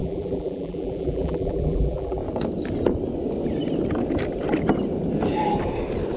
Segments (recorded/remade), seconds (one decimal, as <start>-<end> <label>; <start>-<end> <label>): 0.0-2.2 remade; 2.2-6.2 recorded